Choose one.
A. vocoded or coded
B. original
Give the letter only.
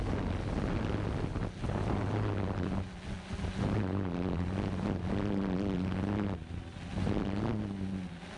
B